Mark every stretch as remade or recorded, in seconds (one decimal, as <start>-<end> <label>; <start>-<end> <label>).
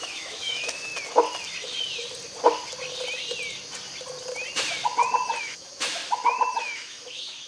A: 0.0-0.9 remade; 0.9-5.4 recorded; 5.4-6.0 remade; 6.0-6.6 recorded; 6.6-7.5 remade